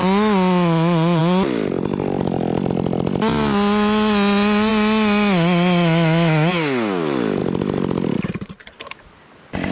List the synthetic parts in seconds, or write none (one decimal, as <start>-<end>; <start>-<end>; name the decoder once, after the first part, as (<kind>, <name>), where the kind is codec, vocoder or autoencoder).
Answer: none